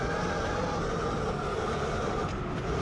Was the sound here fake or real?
real